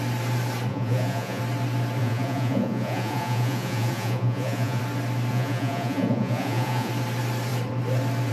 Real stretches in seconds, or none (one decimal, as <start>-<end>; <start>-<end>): 0.0-0.7; 1.4-2.0; 4.8-5.3; 6.9-8.3